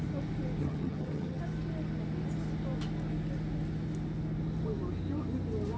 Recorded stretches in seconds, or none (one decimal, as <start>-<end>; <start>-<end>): 0.0-0.6; 1.4-5.8